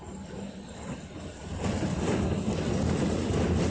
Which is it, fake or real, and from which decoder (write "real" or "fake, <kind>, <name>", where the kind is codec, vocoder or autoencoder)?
fake, vocoder, BigVGAN v2